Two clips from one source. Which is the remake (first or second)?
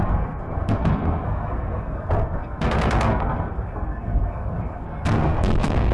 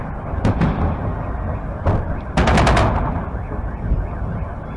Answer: first